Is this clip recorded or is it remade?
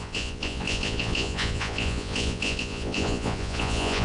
remade